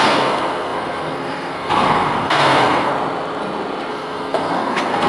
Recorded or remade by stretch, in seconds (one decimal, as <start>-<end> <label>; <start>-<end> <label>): 0.0-2.9 remade; 2.9-3.9 recorded; 3.9-5.1 remade